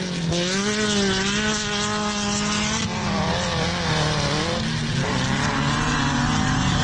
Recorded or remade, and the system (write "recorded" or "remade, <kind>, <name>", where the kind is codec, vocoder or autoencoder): recorded